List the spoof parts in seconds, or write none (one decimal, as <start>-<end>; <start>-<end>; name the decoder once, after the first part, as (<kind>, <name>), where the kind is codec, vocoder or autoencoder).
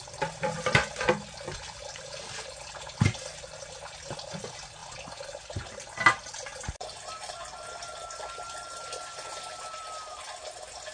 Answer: none